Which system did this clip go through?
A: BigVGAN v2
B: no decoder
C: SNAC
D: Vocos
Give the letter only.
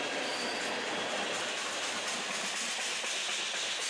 B